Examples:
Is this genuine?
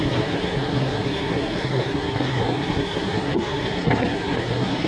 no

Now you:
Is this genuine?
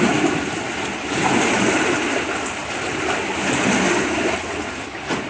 yes